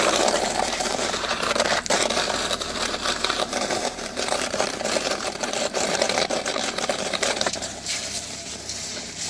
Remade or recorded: remade